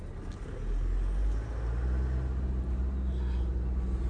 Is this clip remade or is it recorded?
recorded